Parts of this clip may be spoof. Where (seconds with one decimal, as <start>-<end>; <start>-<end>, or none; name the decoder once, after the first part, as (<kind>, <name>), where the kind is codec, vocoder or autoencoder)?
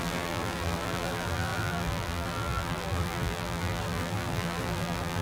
0.0-5.2 (vocoder, BigVGAN v2)